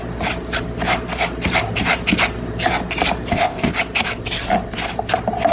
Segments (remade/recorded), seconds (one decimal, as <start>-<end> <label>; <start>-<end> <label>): 0.0-3.3 recorded; 3.3-3.7 remade; 3.7-5.5 recorded